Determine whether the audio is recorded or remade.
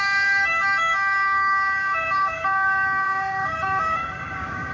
remade